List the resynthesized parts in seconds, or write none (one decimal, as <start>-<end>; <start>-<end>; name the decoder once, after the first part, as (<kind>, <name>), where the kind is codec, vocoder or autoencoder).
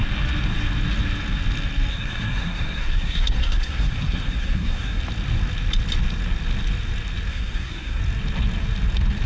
1.9-5.0 (codec, SNAC); 7.3-8.0